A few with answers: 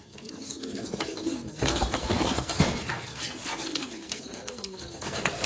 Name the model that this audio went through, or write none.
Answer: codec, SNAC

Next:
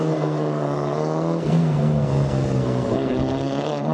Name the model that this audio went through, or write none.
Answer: codec, SNAC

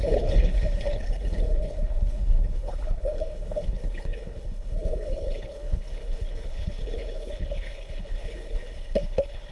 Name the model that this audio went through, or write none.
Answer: codec, HILCodec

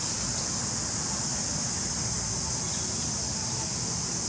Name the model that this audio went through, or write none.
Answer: none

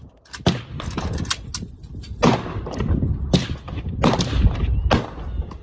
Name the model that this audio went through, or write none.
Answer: none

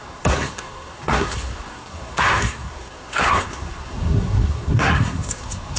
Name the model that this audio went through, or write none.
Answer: codec, SNAC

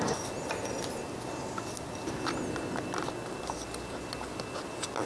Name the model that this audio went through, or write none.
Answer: none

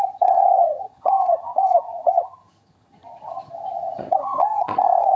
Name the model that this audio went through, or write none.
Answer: vocoder, HiFi-GAN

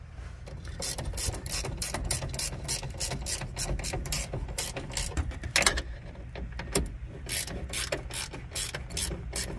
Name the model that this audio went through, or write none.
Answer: none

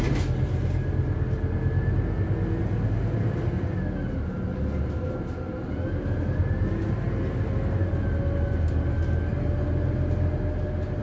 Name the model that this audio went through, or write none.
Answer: none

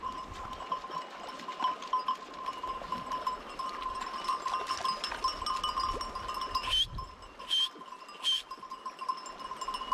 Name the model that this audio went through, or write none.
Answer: none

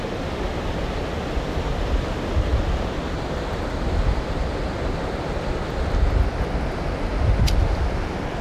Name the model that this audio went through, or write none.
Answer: none